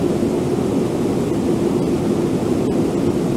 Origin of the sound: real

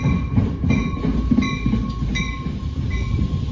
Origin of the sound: real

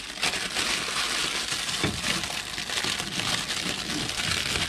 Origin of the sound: real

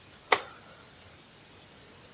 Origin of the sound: fake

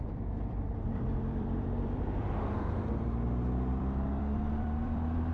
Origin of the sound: fake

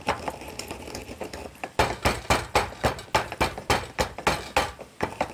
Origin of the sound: real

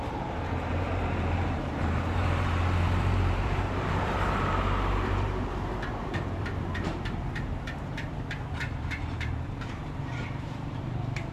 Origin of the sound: fake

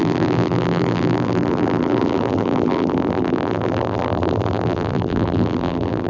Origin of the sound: fake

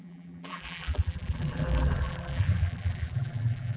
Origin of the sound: fake